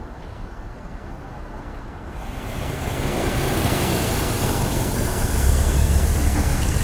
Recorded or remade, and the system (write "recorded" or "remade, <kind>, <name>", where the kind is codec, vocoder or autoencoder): remade, codec, SNAC